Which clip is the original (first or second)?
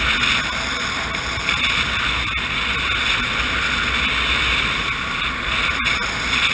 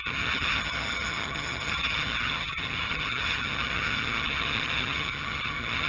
first